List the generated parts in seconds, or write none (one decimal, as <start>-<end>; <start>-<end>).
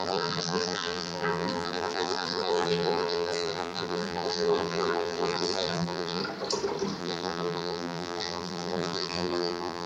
0.0-6.2; 7.0-9.9